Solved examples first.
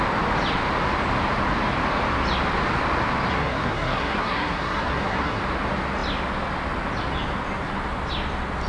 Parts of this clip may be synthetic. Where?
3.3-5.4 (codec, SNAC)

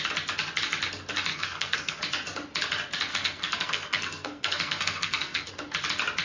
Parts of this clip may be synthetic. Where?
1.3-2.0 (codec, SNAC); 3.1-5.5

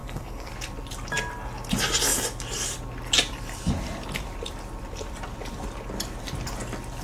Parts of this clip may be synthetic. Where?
0.0-0.5 (codec, SNAC)

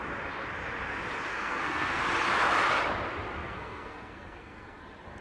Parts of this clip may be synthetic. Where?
1.3-2.0 (codec, SNAC); 3.4-4.8

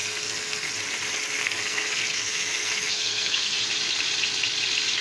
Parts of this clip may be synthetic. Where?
0.0-0.7 (codec, SNAC); 1.4-3.6